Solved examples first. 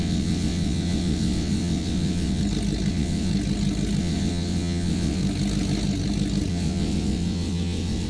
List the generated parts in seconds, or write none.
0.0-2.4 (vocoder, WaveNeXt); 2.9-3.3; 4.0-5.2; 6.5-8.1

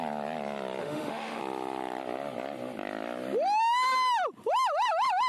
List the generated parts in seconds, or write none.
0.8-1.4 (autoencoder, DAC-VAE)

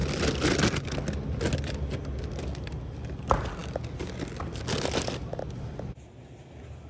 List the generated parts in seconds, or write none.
none